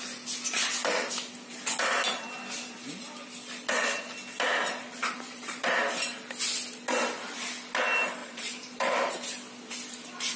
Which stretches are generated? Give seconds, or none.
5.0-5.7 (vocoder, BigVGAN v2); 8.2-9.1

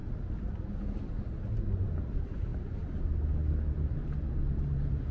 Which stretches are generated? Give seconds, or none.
none

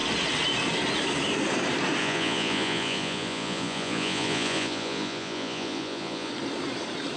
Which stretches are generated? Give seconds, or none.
2.0-6.3 (vocoder, Vocos)